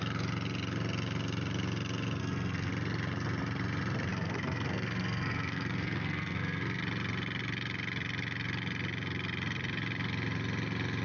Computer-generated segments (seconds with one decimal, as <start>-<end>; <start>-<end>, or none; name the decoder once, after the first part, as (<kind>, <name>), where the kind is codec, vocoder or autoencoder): 2.2-2.7 (codec, SNAC); 4.1-6.8